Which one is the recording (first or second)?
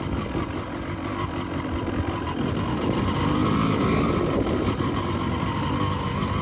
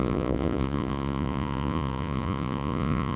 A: first